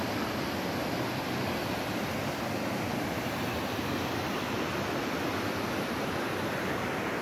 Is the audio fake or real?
real